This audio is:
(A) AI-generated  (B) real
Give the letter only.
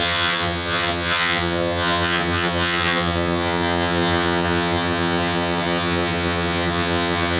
A